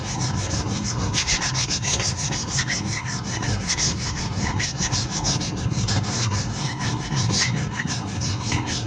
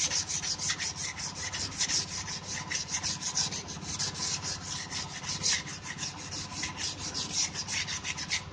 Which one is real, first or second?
second